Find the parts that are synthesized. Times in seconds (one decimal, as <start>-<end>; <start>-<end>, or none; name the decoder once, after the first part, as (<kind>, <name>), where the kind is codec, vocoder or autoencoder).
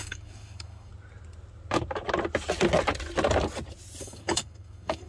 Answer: 0.0-0.9 (codec, DAC); 4.0-5.1